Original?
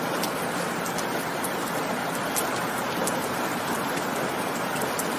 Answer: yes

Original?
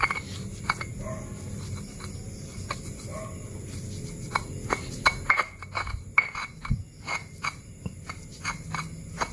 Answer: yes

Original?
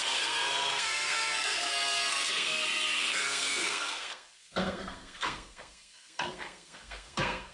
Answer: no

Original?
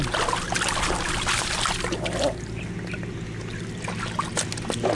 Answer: yes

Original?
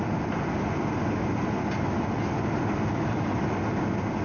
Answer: yes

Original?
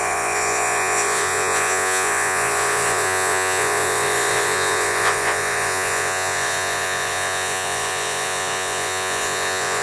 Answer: no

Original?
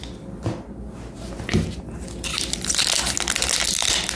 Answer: yes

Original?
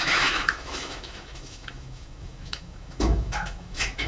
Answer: no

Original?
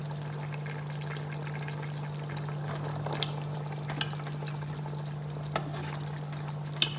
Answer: yes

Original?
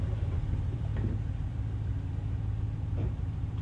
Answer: no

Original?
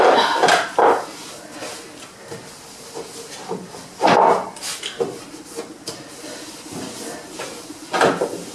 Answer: yes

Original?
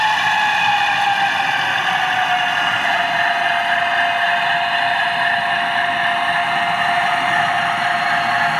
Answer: yes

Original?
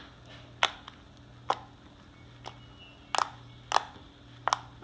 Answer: yes